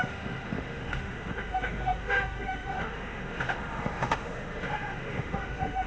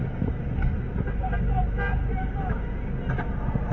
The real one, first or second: second